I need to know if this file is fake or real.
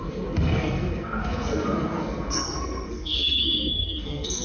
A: fake